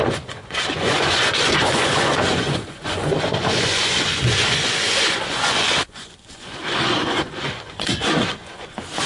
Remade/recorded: remade